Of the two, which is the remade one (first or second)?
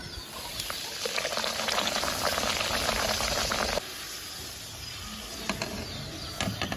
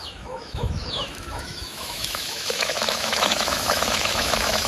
second